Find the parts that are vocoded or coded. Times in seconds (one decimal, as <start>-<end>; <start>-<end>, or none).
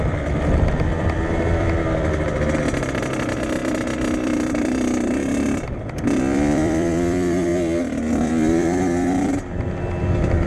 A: 0.0-7.5; 8.3-10.5